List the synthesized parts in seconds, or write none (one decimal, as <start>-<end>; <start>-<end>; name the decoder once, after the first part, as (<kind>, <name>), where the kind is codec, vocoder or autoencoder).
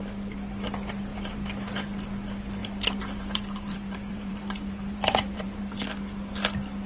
1.1-1.7 (vocoder, BigVGAN v2); 2.6-5.6